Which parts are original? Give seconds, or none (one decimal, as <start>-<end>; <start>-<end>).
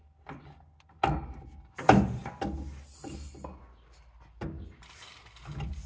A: 0.0-5.9